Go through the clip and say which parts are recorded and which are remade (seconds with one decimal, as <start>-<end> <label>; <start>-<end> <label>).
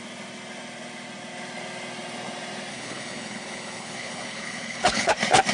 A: 0.0-2.7 recorded; 2.7-5.1 remade; 5.1-5.5 recorded